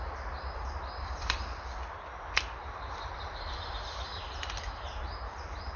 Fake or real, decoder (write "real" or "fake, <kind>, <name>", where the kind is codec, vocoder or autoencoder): fake, vocoder, BigVGAN v2